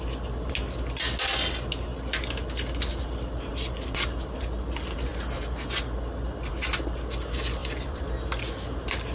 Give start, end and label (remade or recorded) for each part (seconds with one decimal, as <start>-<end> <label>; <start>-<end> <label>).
0.0-7.6 recorded; 7.6-8.2 remade; 8.2-9.1 recorded